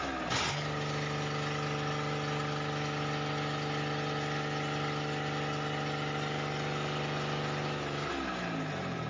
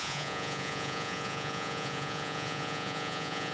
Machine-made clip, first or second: second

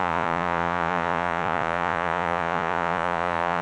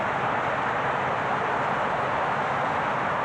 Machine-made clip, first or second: first